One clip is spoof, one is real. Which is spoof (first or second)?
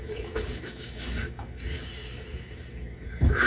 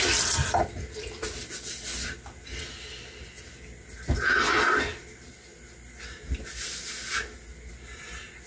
first